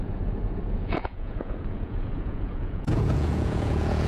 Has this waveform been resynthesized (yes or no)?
yes